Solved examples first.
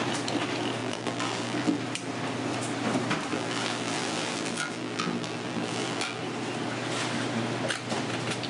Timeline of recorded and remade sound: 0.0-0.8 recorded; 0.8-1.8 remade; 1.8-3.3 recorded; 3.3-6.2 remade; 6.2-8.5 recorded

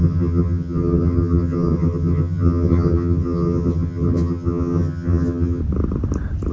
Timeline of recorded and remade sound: 0.0-5.6 remade; 5.6-6.5 recorded

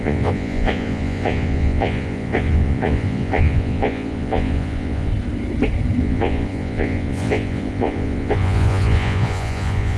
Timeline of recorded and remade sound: 0.0-5.1 remade; 5.1-6.0 recorded; 6.0-10.0 remade

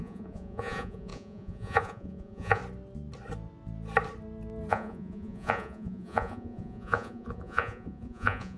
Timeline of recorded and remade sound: 0.0-2.6 remade; 2.6-4.7 recorded; 4.7-8.6 remade

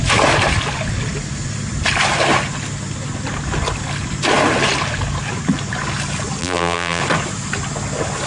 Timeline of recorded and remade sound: 0.0-6.4 recorded; 6.4-7.0 remade; 7.0-8.3 recorded